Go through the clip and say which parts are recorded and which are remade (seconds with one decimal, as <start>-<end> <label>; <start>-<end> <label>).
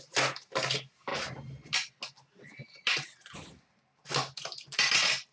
0.0-5.3 recorded